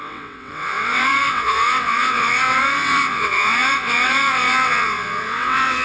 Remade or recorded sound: remade